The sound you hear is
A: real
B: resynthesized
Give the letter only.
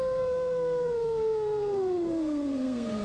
B